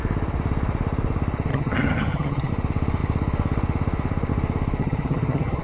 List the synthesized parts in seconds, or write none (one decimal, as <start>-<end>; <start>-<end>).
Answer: 1.5-2.5; 4.8-5.6

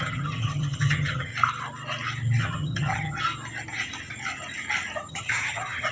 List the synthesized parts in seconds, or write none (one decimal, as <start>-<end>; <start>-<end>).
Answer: 0.0-1.3; 2.4-3.3; 5.1-5.9

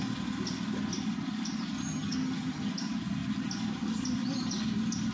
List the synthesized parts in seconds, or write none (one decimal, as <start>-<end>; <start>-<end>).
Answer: 1.9-2.7